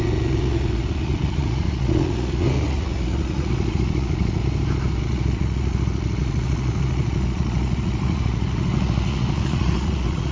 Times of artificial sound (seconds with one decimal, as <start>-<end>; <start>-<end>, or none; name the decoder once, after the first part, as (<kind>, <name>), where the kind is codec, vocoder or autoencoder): 0.0-4.4 (vocoder, Vocos); 5.0-10.3